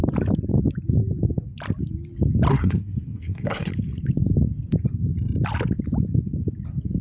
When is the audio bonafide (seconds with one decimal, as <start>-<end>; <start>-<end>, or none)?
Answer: 0.0-2.5; 3.7-7.0